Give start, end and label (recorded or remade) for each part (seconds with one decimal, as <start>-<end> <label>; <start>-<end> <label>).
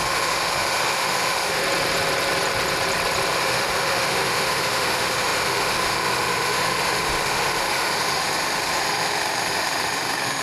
0.0-1.6 remade; 1.6-3.3 recorded; 3.3-10.4 remade